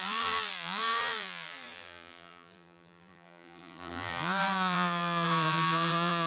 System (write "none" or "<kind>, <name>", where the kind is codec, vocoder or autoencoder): vocoder, BigVGAN v2